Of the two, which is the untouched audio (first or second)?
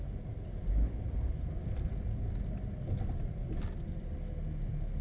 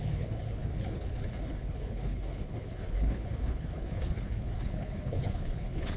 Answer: first